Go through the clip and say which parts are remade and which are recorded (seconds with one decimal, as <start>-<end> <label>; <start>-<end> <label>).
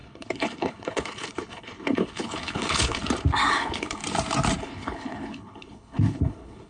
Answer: 0.0-3.0 remade; 3.0-3.5 recorded; 3.5-4.0 remade; 4.0-4.6 recorded; 4.6-6.7 remade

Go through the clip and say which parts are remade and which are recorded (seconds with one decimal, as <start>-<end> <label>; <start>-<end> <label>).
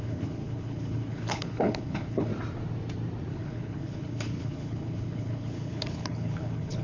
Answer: 0.0-2.3 remade; 2.3-3.3 recorded; 3.3-6.8 remade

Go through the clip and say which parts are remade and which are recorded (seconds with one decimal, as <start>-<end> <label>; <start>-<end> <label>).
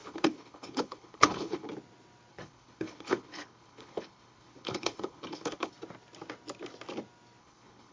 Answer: 0.0-1.7 remade; 1.7-2.3 recorded; 2.3-5.7 remade; 5.7-7.4 recorded; 7.4-7.9 remade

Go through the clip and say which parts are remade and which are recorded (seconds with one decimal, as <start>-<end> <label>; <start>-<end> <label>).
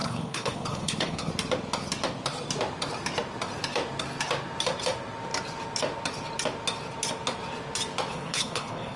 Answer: 0.0-1.3 remade; 1.3-8.1 recorded; 8.1-9.0 remade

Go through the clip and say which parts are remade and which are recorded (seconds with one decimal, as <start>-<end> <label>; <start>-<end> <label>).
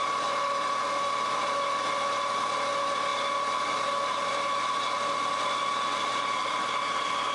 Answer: 0.0-7.3 recorded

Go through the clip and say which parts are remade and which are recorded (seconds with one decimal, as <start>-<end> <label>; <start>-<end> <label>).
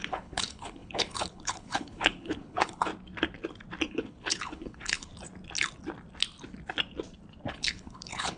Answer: 0.0-2.9 remade; 2.9-3.9 recorded; 3.9-5.1 remade; 5.1-7.5 recorded; 7.5-8.4 remade